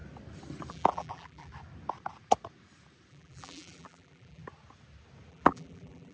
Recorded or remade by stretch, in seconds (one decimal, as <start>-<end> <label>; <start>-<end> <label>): 0.0-0.7 recorded; 0.7-1.5 remade; 1.5-3.1 recorded; 3.1-4.4 remade; 4.4-5.3 recorded; 5.3-6.1 remade

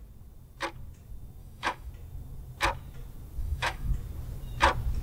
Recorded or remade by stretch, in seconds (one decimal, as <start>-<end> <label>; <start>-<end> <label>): 0.0-1.4 recorded; 1.4-1.9 remade; 1.9-3.4 recorded; 3.4-3.9 remade; 3.9-5.0 recorded

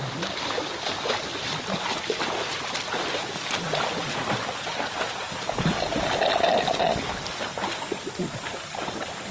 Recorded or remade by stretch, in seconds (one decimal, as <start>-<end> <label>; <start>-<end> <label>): 0.0-9.3 recorded

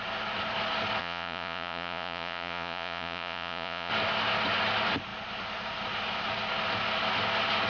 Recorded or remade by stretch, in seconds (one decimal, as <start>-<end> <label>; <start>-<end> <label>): 0.0-1.0 recorded; 1.0-3.9 remade; 3.9-7.7 recorded

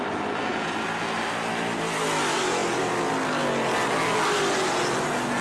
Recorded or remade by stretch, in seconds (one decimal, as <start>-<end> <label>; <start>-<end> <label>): 0.0-5.4 recorded

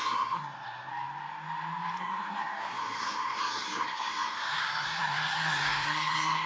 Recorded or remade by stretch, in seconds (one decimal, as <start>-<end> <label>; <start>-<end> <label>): 0.0-0.9 remade; 0.9-2.0 recorded; 2.0-6.5 remade